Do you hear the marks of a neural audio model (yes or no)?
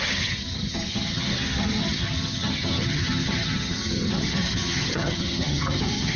yes